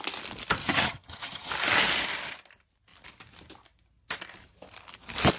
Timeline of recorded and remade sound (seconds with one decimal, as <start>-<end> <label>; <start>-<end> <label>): 0.0-0.6 recorded; 0.6-1.5 remade; 1.5-5.4 recorded